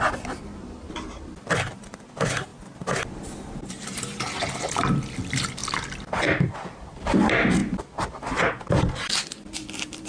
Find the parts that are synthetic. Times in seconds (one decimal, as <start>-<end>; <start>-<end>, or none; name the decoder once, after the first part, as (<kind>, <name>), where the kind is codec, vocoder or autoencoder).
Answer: 0.0-2.5 (vocoder, BigVGAN v2); 4.4-7.6; 8.8-10.1